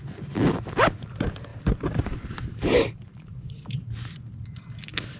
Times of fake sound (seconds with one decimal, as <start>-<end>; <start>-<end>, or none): 1.5-4.6